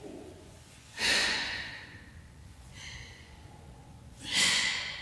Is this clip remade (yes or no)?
yes